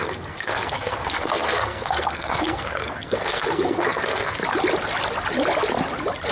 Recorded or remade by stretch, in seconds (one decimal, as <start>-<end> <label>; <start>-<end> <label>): 0.0-4.4 remade; 4.4-6.3 recorded